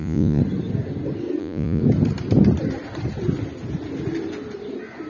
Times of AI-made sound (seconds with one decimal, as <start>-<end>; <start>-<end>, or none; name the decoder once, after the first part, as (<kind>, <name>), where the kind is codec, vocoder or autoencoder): 0.0-0.4 (vocoder, Vocos); 1.4-1.8